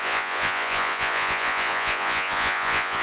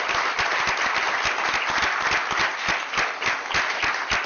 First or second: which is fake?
first